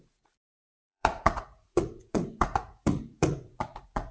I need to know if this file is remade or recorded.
remade